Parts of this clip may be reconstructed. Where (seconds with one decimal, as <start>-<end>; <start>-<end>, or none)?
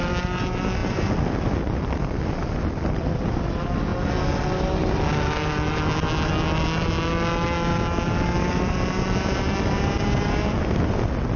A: none